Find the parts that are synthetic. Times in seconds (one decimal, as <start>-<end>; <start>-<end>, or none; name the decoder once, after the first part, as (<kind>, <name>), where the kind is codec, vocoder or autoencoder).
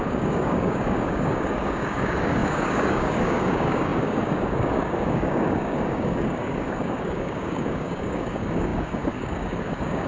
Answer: 0.0-10.1 (codec, DAC)